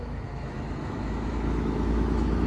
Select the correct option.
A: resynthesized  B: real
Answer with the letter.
A